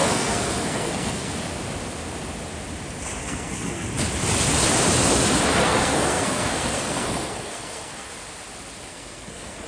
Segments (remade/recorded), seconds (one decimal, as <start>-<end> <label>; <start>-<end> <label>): 0.0-1.4 remade; 1.4-3.2 recorded; 3.2-3.9 remade; 3.9-5.6 recorded; 5.6-8.1 remade; 8.1-8.9 recorded; 8.9-9.7 remade